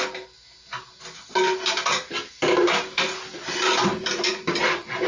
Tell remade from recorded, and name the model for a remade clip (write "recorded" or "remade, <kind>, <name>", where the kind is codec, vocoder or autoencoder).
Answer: recorded